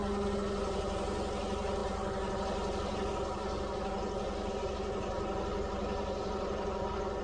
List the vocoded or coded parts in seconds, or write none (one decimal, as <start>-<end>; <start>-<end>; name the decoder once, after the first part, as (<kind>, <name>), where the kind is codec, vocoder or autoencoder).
none